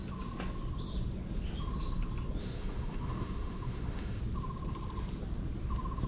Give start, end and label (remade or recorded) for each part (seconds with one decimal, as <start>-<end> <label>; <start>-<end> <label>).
0.0-2.4 recorded; 2.4-4.2 remade; 4.2-6.1 recorded